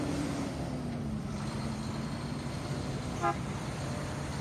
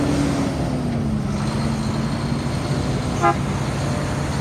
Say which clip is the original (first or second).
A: second